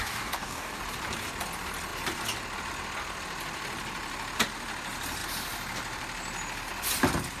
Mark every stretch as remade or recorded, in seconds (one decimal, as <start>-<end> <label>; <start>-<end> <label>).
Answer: 0.0-0.8 remade; 0.8-7.4 recorded